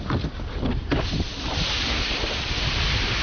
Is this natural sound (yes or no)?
yes